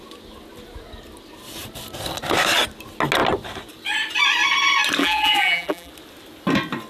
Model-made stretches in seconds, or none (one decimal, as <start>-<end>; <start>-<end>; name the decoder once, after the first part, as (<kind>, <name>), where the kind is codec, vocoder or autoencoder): 5.0-5.9 (vocoder, BigVGAN v2)